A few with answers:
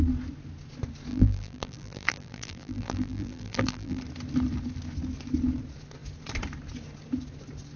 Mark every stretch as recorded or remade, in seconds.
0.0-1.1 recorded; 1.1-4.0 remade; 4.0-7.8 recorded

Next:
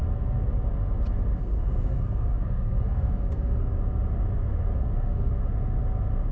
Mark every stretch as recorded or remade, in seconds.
0.0-1.4 recorded; 1.4-3.6 remade; 3.6-4.7 recorded; 4.7-5.3 remade; 5.3-6.3 recorded

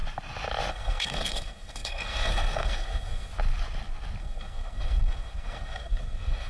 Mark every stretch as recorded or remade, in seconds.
0.0-0.7 recorded; 0.7-3.3 remade; 3.3-4.2 recorded; 4.2-6.5 remade

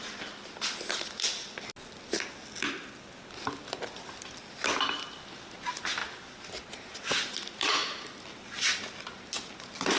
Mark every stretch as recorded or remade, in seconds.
0.0-10.0 recorded